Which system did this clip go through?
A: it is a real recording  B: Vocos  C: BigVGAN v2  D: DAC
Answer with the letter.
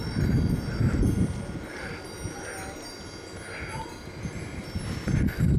A